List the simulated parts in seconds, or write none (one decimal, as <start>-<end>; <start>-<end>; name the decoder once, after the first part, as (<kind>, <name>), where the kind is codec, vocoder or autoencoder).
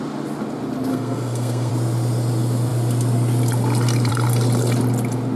0.9-1.7 (codec, SNAC)